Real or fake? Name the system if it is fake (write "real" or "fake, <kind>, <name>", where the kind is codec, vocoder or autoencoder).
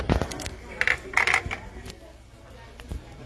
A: real